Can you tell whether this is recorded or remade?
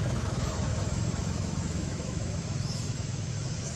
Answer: remade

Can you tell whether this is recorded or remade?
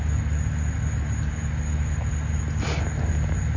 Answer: recorded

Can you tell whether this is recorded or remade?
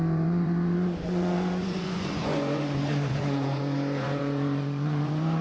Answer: remade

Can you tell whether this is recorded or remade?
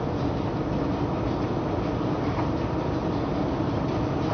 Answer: recorded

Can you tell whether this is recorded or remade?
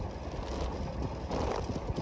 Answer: recorded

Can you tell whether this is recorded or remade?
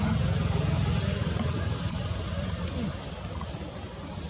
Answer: recorded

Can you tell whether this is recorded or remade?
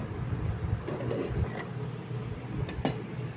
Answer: recorded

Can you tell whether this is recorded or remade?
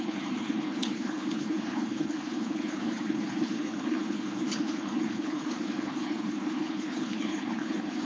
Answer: remade